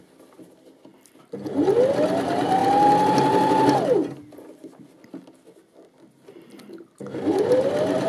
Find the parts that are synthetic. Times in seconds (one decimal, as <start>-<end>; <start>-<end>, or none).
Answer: none